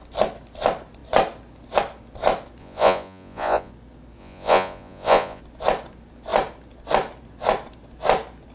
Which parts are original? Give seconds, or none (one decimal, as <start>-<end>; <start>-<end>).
0.0-2.6; 3.7-4.2; 5.4-8.5